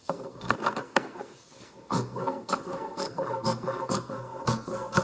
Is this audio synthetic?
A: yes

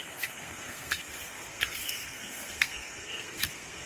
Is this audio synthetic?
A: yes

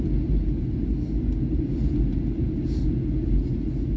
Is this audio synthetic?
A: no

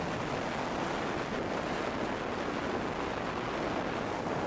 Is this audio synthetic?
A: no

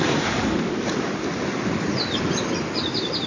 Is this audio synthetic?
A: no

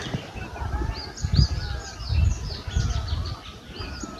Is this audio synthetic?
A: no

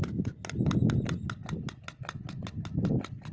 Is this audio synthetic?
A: no